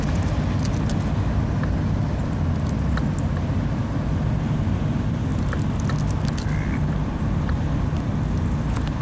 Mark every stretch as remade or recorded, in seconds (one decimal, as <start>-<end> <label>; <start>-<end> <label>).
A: 0.0-5.3 recorded; 5.3-5.9 remade; 5.9-9.0 recorded

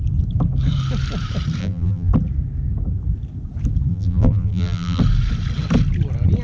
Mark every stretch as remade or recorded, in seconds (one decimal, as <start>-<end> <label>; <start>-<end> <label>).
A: 0.0-1.6 recorded; 1.6-2.1 remade; 2.1-3.9 recorded; 3.9-5.0 remade; 5.0-6.4 recorded

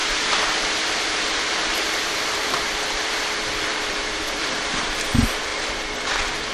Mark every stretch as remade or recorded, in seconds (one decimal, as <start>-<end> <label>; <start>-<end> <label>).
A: 0.0-6.5 remade

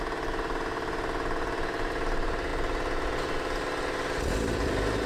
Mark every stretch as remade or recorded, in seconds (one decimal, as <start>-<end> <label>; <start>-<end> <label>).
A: 0.0-5.1 recorded

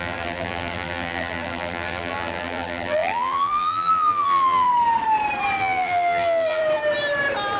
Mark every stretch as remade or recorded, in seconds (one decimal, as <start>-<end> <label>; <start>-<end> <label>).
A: 0.0-4.7 remade; 4.7-5.6 recorded; 5.6-6.6 remade; 6.6-7.6 recorded

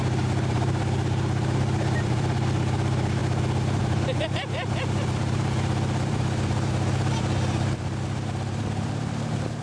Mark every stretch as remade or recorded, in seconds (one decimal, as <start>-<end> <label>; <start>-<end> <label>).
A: 0.0-3.2 remade; 3.2-3.8 recorded; 3.8-9.6 remade